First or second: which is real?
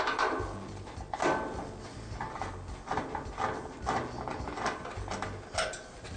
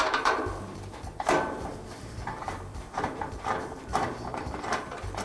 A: first